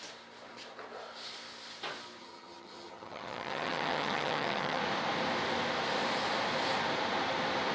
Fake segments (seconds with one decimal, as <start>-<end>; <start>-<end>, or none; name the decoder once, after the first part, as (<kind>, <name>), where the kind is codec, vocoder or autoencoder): 2.2-4.8 (vocoder, HiFi-GAN)